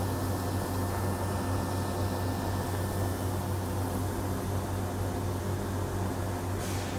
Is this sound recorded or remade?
recorded